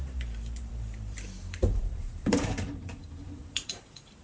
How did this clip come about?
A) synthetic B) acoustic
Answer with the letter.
A